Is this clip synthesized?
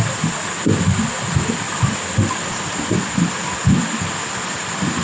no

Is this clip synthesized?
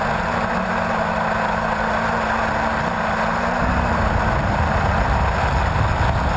no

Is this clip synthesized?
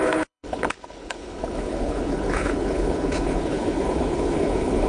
yes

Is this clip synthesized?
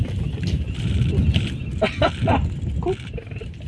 no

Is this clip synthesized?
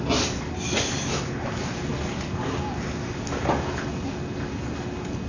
no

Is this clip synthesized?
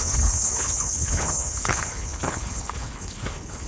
yes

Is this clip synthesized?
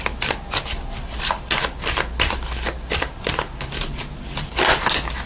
no